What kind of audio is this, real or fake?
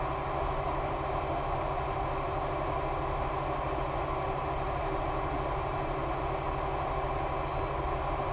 real